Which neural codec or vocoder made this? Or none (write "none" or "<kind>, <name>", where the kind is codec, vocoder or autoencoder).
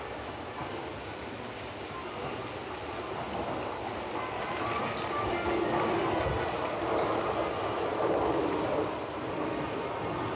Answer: none